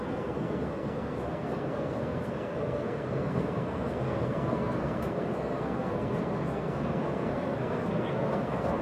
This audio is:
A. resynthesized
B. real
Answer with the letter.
A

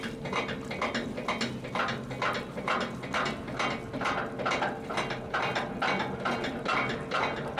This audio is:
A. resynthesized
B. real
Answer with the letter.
B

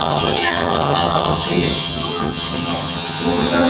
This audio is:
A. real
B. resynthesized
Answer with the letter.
B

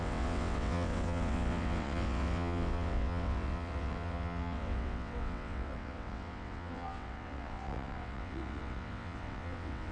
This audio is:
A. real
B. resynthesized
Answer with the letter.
B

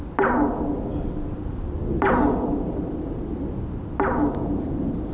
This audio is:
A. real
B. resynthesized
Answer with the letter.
A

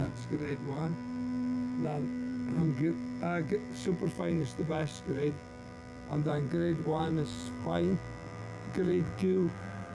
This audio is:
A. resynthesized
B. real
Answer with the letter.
A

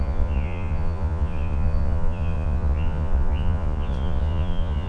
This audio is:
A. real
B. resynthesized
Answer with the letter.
B